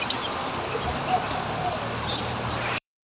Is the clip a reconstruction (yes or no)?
yes